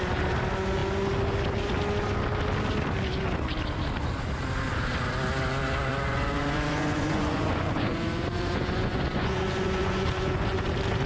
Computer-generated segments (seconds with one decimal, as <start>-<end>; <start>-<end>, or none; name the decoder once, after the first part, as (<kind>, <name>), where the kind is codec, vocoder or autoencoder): 5.9-10.6 (vocoder, Vocos)